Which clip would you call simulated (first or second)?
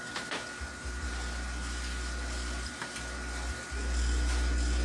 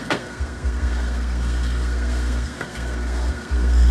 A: second